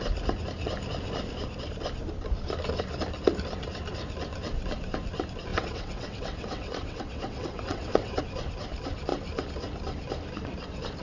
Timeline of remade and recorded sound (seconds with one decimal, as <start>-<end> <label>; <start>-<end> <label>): 0.0-5.5 recorded; 5.5-8.2 remade; 8.2-11.0 recorded